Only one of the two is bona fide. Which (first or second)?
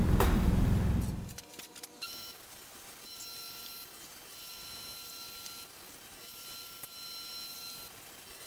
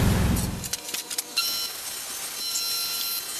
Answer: second